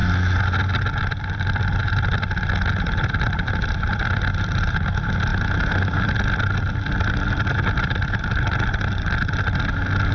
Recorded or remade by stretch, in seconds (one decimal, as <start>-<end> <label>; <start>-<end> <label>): 0.0-1.0 recorded; 1.0-10.1 remade